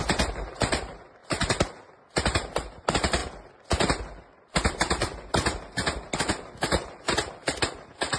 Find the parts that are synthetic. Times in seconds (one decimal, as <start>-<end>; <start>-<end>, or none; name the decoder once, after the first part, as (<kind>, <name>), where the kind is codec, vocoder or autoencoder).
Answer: none